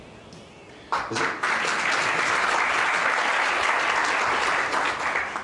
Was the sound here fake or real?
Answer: real